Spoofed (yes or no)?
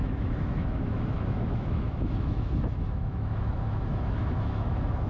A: yes